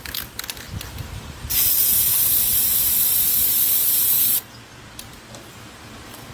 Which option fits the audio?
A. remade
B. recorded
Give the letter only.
B